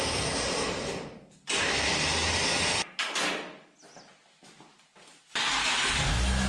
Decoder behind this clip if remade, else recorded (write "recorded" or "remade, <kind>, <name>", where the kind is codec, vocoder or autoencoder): recorded